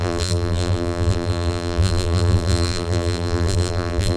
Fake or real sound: fake